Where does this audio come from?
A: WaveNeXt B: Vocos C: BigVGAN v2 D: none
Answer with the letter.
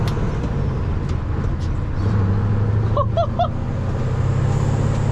D